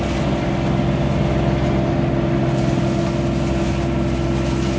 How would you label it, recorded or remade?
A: recorded